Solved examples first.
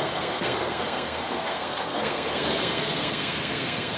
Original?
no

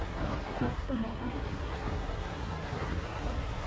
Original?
no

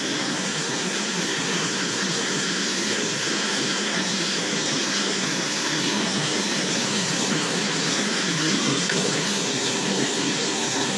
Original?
no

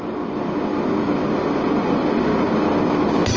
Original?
yes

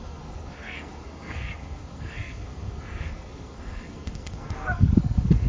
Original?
no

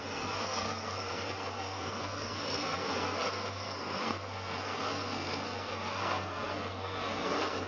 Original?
no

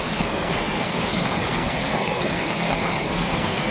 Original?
no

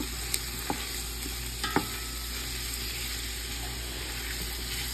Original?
yes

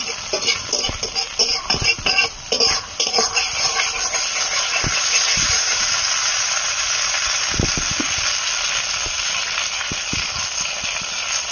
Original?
yes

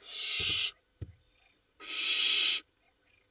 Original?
yes